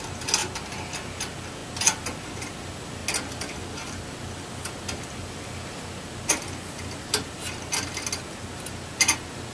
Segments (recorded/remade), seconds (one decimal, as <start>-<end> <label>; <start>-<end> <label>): 0.0-9.5 recorded